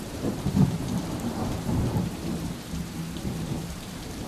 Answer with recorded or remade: remade